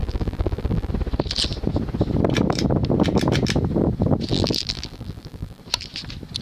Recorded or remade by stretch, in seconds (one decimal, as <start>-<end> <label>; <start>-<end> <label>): 0.0-0.9 remade; 0.9-4.3 recorded; 4.3-5.6 remade; 5.6-6.4 recorded